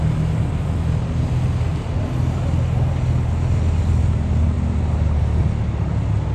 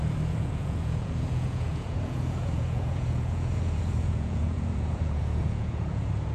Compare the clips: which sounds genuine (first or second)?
first